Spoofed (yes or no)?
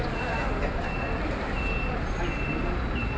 no